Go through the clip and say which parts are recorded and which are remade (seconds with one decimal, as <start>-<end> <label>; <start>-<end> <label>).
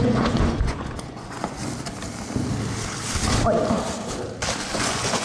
0.0-1.6 remade; 1.6-4.7 recorded; 4.7-5.2 remade